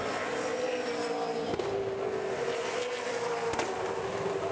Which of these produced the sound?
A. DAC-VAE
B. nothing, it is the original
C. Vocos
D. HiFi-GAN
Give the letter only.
B